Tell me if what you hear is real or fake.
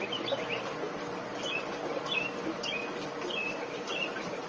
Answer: real